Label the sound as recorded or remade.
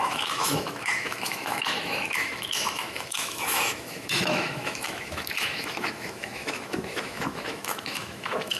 remade